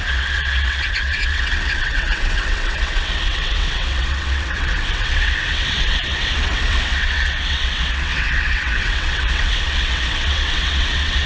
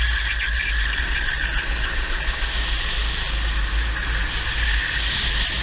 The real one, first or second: second